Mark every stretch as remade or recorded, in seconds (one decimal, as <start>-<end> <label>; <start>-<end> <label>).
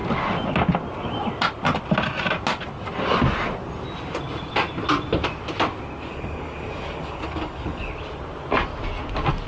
0.0-6.1 recorded; 6.1-7.9 remade; 7.9-9.5 recorded